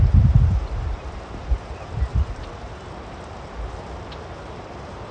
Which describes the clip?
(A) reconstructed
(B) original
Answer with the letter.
B